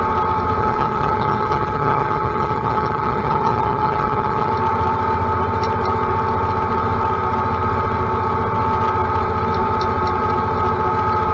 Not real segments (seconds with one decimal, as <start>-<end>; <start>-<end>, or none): 0.6-4.5